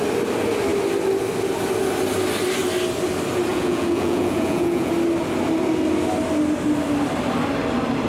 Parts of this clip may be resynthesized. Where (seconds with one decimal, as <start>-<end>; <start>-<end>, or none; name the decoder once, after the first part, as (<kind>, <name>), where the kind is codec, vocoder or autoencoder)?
3.5-4.9 (vocoder, Vocos)